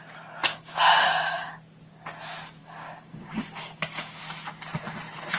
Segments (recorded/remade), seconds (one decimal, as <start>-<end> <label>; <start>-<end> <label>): 0.0-0.5 recorded; 0.5-1.5 remade; 1.5-2.6 recorded; 2.6-4.2 remade; 4.2-5.4 recorded